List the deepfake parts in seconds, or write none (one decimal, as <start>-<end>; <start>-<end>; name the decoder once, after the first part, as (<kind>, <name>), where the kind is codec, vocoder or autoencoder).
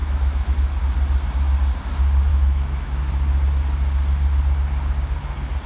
0.0-0.5 (autoencoder, DAC-VAE); 2.3-3.0